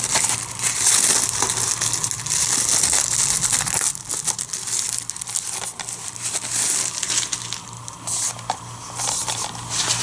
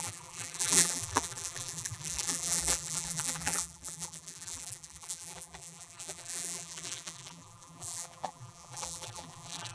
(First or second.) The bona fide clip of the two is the first